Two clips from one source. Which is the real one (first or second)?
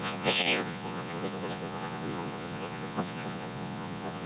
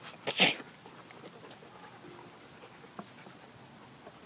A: second